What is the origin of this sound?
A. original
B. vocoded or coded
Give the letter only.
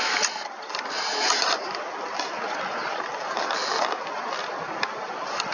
A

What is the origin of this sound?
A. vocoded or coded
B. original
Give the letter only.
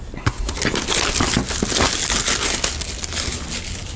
B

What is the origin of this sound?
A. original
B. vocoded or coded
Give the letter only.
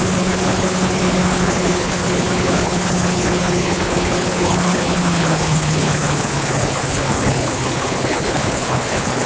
B